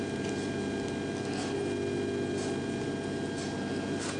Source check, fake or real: real